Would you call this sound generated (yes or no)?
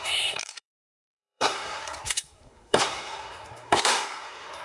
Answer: yes